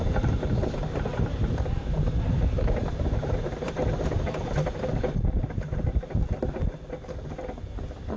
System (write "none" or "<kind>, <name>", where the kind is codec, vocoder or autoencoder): vocoder, BigVGAN v2